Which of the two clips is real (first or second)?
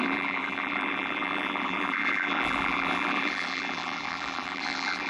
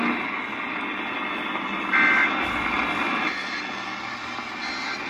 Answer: second